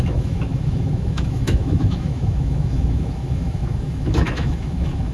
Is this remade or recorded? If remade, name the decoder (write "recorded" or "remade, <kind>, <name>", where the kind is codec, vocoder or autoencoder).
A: remade, autoencoder, DAC-VAE